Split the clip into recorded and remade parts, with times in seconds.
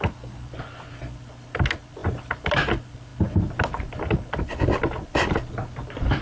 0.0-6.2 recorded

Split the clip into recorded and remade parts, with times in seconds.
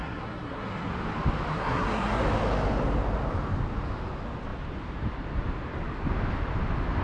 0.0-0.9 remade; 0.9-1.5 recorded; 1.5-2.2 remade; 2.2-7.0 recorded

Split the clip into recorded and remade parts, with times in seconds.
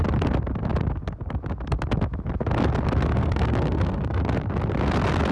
0.0-3.1 recorded; 3.1-4.2 remade; 4.2-5.3 recorded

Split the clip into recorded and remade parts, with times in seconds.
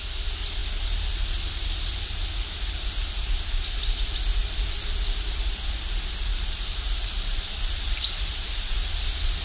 0.0-6.3 recorded; 6.3-8.6 remade; 8.6-9.4 recorded